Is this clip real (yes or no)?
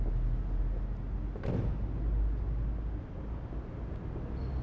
yes